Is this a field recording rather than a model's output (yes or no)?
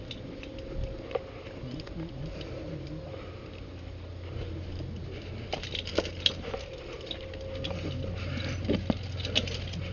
yes